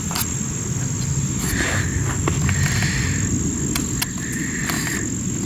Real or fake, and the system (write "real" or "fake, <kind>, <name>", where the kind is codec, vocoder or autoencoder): real